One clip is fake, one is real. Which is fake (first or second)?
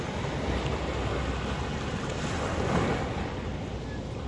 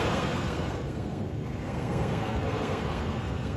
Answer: second